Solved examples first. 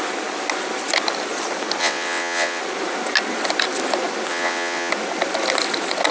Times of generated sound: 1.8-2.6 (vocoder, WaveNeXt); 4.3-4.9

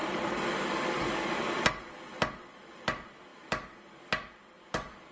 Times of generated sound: none

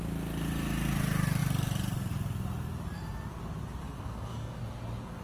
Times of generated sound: 3.8-4.6 (codec, SNAC)

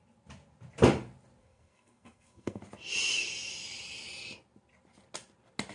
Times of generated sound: 1.4-2.6 (codec, SNAC)